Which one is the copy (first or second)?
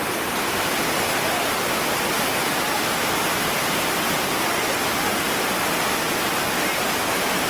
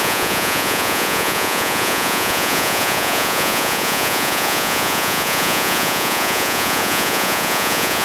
second